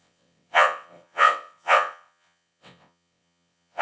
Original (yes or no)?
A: no